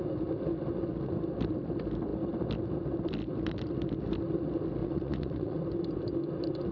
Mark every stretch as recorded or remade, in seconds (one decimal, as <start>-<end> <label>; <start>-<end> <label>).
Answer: 0.0-4.8 recorded; 4.8-5.6 remade; 5.6-6.7 recorded